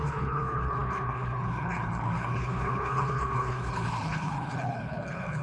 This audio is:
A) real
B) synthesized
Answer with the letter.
B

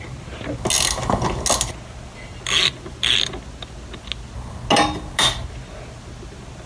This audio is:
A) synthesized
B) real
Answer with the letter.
B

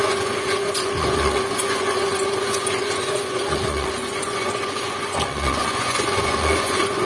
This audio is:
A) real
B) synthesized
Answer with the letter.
B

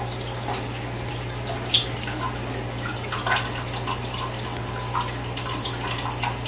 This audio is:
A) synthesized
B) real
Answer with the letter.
B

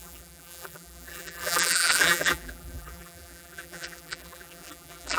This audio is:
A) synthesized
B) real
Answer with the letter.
A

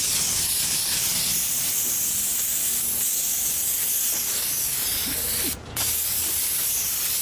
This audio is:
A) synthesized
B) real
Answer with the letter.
B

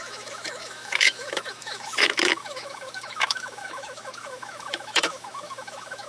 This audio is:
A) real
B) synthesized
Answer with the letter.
B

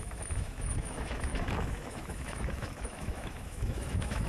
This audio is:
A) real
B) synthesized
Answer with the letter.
B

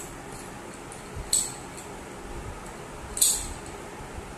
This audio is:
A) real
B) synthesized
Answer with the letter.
A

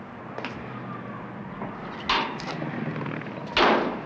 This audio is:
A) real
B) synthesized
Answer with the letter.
A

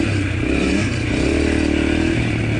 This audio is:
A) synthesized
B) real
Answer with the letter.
B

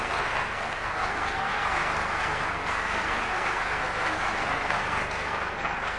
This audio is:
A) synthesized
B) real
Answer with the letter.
A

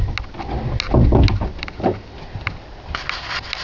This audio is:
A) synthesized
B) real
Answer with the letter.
B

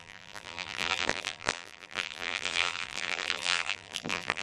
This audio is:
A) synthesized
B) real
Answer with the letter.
A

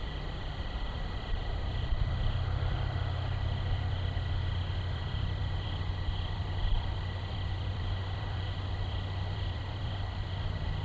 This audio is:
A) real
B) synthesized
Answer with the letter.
B